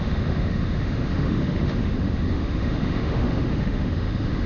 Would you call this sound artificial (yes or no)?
yes